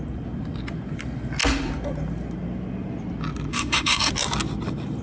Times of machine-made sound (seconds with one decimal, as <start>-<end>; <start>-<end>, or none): 3.5-4.1